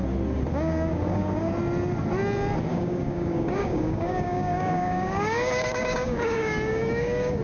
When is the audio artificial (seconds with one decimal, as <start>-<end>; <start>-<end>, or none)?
0.5-1.5; 2.7-7.4